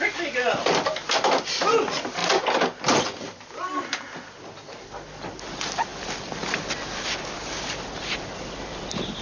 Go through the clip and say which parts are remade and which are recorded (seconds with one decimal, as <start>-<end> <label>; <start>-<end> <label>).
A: 0.0-9.2 recorded